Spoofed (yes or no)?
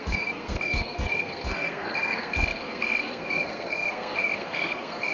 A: yes